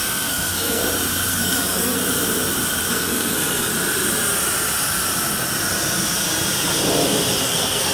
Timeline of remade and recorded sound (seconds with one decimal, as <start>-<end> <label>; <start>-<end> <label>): 0.0-0.8 remade; 0.8-1.3 recorded; 1.3-2.0 remade; 2.0-2.9 recorded; 2.9-3.7 remade; 3.7-7.4 recorded; 7.4-7.9 remade